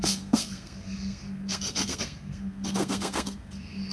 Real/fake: fake